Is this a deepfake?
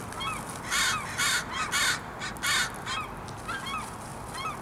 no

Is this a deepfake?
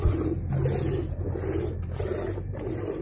no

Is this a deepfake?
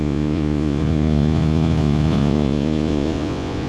yes